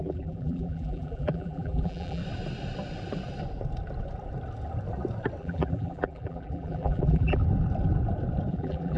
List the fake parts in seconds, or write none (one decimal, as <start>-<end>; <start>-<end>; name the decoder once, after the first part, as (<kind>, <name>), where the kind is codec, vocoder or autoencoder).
0.0-2.2 (vocoder, BigVGAN v2); 5.4-7.4; 8.5-9.0